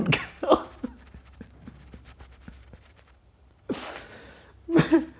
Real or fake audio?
fake